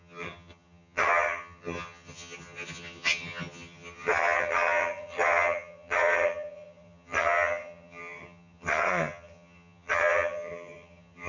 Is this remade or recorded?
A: remade